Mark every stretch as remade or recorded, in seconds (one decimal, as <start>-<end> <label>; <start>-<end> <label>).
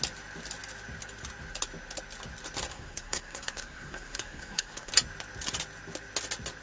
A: 0.0-2.7 recorded; 2.7-4.9 remade; 4.9-6.6 recorded